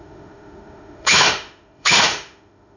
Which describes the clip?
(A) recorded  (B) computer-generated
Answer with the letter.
B